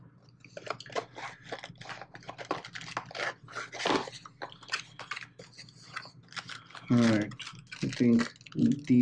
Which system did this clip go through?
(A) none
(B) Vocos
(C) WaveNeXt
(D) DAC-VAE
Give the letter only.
A